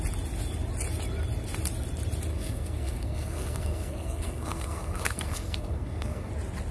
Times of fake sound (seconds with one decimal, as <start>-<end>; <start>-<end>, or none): 2.3-6.3